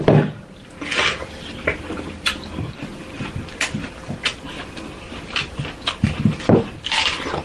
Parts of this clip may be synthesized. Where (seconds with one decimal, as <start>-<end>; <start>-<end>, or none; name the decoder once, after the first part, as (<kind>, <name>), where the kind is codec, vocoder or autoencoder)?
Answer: 1.2-3.8 (vocoder, BigVGAN v2); 4.2-6.2